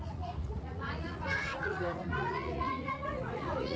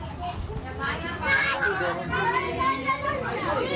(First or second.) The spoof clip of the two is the first